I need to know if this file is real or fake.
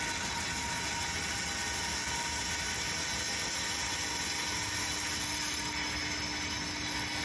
real